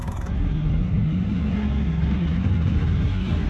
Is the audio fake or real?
fake